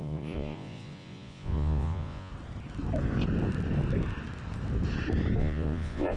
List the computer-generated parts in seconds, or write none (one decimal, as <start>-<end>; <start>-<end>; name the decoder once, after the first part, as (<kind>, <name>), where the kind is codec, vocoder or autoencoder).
0.0-2.3 (vocoder, Vocos); 5.4-6.2